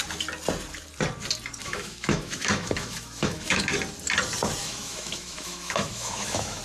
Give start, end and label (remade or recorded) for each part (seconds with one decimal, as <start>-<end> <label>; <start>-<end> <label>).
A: 0.0-1.6 recorded; 1.6-3.6 remade; 3.6-4.6 recorded; 4.6-6.6 remade